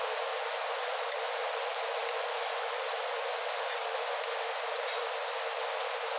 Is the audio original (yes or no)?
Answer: yes